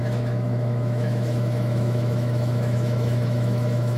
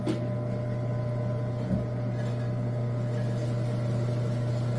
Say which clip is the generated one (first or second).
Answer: first